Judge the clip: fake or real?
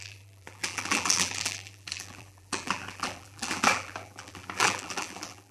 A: fake